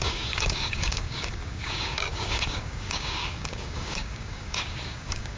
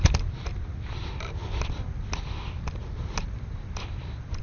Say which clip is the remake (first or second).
first